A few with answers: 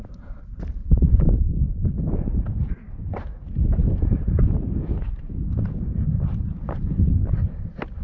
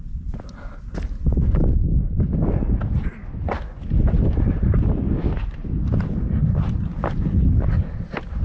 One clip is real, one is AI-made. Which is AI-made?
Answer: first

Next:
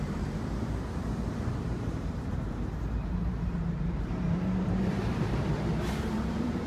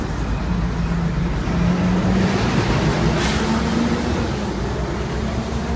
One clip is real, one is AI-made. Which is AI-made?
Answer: first